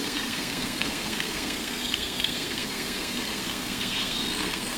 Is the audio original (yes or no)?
no